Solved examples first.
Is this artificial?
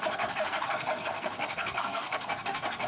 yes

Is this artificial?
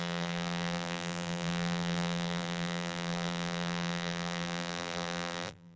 yes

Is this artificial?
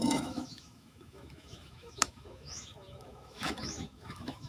yes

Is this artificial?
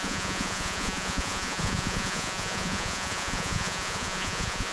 yes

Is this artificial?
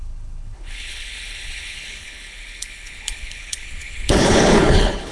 yes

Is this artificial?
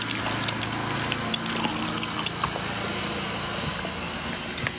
no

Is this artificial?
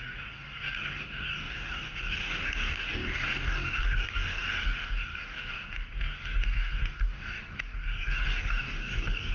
yes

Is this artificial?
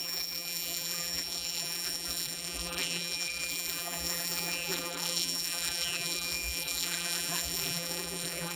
yes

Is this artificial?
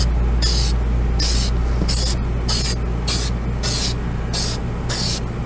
no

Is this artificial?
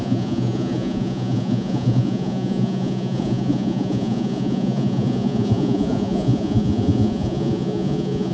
yes